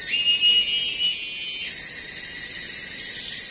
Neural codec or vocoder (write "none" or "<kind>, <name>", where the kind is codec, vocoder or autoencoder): none